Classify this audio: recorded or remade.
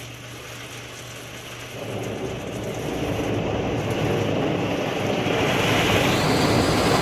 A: recorded